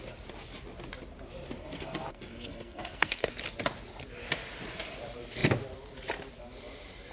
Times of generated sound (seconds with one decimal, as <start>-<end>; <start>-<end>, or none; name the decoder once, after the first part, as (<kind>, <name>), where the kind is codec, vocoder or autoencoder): 1.6-3.3 (codec, SNAC)